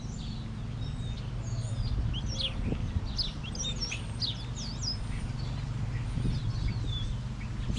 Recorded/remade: recorded